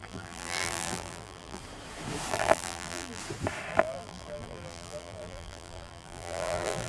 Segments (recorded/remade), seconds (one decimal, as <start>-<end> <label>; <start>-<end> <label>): 0.0-1.6 remade; 1.6-2.3 recorded; 2.3-3.2 remade; 3.2-3.7 recorded; 3.7-6.9 remade